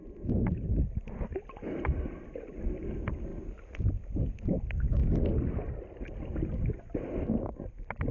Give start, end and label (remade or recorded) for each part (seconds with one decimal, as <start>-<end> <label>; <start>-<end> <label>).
0.0-8.1 recorded